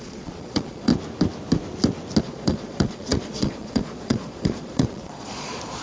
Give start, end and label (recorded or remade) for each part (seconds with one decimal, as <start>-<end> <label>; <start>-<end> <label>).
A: 0.0-0.9 remade; 0.9-2.2 recorded; 2.2-5.8 remade